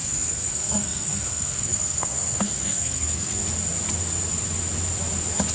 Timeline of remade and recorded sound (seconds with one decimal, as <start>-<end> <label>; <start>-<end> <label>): 0.0-3.4 remade; 3.4-5.5 recorded